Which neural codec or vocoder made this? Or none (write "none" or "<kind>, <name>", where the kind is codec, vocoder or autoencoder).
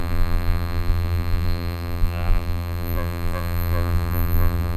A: vocoder, BigVGAN v2